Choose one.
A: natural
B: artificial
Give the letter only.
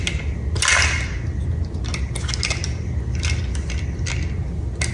A